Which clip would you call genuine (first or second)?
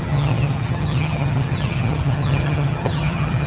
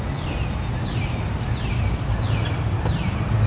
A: second